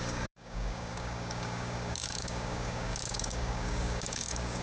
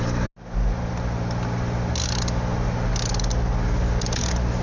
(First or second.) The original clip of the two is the second